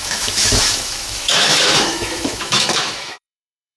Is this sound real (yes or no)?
no